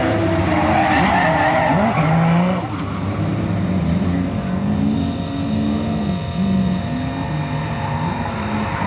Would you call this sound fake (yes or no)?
no